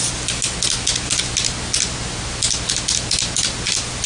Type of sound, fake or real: real